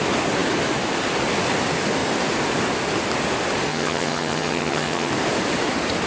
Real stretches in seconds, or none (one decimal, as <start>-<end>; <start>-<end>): 0.0-3.7; 5.1-6.1